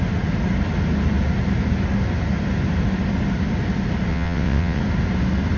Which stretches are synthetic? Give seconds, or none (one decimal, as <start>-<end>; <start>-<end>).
4.1-4.8